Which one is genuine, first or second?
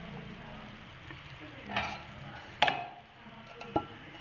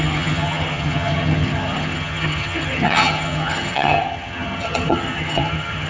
first